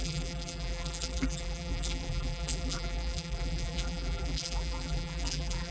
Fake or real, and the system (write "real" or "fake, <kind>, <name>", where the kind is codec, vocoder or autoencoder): fake, vocoder, BigVGAN v2